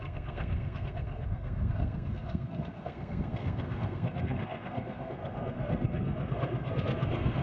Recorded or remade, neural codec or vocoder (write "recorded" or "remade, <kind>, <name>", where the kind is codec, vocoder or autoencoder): remade, codec, SNAC